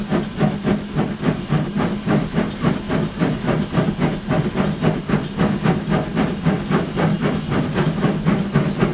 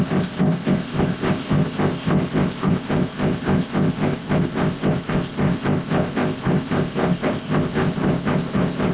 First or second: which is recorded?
first